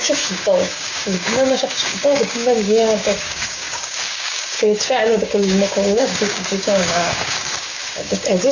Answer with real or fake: fake